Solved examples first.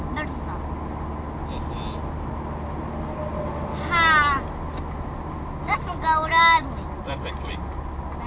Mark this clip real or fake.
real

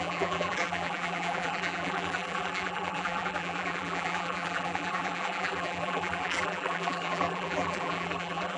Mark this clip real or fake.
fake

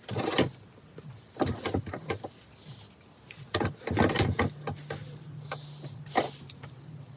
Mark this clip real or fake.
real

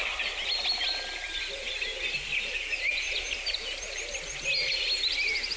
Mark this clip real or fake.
real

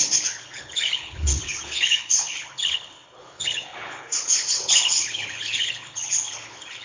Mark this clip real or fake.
fake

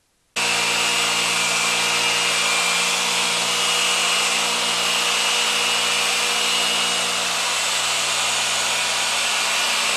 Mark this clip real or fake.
real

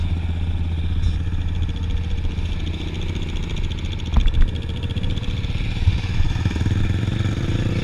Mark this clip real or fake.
real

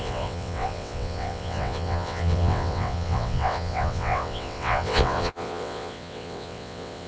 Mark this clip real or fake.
fake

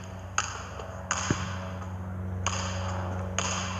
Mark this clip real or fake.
real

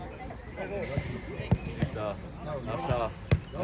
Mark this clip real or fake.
real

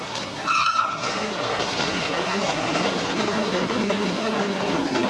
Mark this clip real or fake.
fake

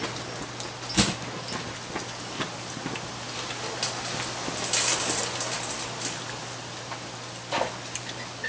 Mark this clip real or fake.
real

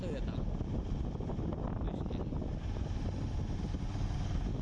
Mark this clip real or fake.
real